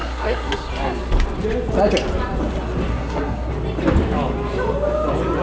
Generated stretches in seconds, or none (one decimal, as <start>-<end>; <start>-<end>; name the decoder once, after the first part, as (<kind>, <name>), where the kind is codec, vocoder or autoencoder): 0.0-0.7 (codec, SNAC); 2.9-3.5